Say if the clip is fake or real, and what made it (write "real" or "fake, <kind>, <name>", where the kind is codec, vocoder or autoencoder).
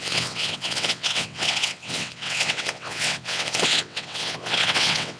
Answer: fake, vocoder, WaveNeXt